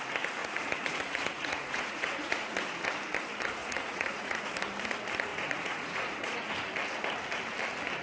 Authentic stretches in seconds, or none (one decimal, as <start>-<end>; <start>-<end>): 0.0-0.4; 2.5-3.6; 4.5-5.3; 6.5-8.0